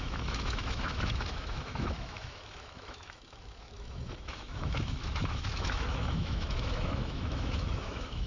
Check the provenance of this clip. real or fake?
fake